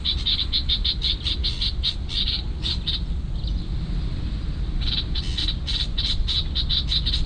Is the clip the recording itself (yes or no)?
yes